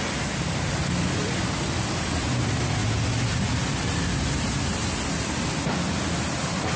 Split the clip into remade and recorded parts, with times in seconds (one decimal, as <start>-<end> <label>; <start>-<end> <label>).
0.0-6.8 recorded